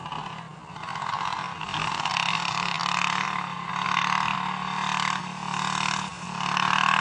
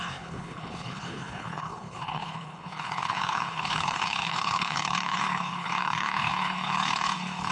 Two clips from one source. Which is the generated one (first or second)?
second